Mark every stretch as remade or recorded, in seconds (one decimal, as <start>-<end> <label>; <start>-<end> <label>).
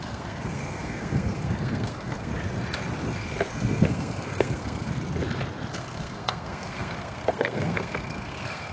0.0-2.3 remade; 2.3-3.5 recorded; 3.5-4.9 remade; 4.9-5.7 recorded; 5.7-8.7 remade